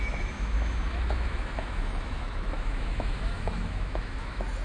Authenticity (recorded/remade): remade